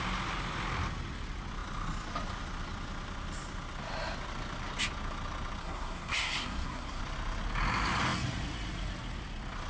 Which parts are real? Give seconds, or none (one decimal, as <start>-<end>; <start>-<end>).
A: 0.0-5.6; 7.0-9.7